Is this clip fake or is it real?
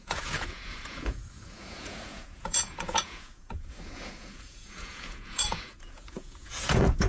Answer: fake